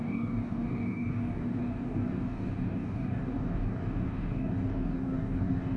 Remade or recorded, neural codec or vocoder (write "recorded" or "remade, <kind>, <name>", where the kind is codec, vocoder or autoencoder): remade, codec, DAC